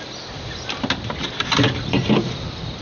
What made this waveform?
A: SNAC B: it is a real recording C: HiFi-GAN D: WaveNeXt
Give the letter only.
B